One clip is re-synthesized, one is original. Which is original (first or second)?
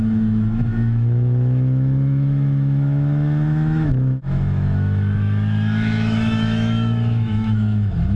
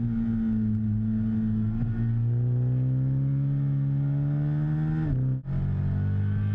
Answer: second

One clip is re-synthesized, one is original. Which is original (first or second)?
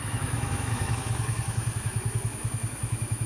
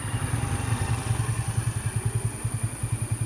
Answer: second